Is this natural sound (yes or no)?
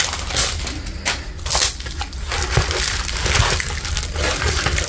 yes